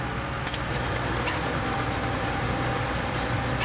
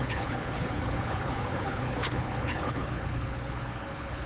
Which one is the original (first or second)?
first